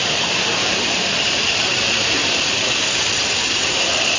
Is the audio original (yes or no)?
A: no